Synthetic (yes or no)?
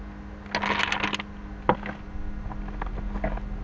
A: no